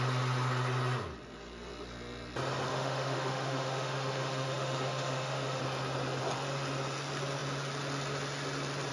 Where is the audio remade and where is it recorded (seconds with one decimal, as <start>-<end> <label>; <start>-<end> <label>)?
0.0-2.7 recorded; 2.7-5.6 remade; 5.6-8.9 recorded